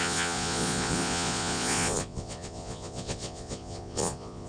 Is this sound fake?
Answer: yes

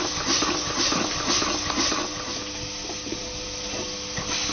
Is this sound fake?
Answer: no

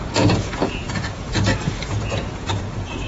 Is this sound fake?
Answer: yes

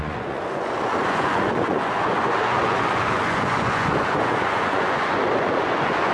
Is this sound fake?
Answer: yes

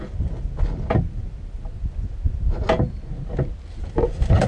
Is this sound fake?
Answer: no